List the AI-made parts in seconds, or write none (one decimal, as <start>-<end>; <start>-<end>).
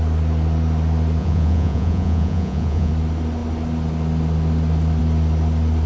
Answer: 1.2-2.9